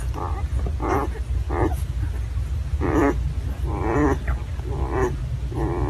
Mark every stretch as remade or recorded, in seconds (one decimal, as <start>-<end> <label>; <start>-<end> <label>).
0.0-5.9 recorded